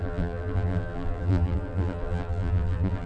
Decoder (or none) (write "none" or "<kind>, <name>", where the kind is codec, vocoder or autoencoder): vocoder, BigVGAN v2